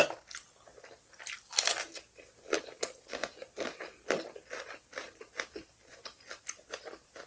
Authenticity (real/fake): real